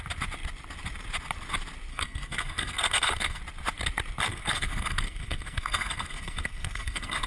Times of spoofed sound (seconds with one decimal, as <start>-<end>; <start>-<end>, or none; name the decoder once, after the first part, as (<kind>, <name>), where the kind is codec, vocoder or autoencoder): 1.9-3.4 (codec, SNAC); 4.3-7.3